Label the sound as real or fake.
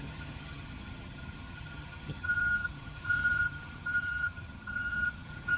fake